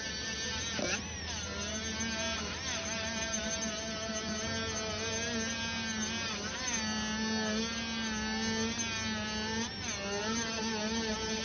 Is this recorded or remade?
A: recorded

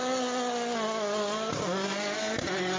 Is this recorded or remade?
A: recorded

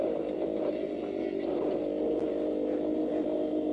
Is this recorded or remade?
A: recorded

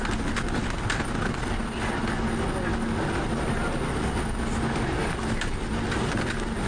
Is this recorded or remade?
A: recorded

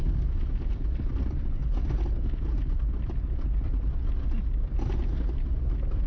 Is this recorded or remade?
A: recorded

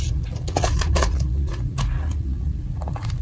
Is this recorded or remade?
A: remade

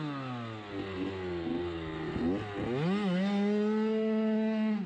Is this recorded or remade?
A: recorded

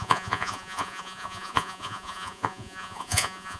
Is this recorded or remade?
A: remade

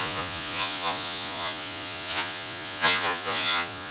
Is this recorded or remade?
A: remade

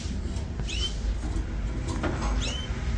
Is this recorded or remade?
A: recorded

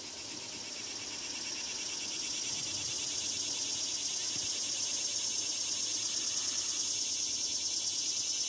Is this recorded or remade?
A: recorded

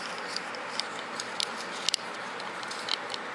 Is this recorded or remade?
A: recorded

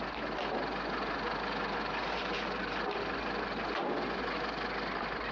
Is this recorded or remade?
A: recorded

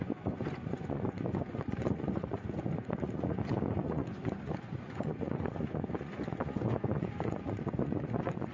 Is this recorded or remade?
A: remade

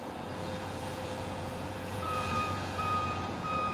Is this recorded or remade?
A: remade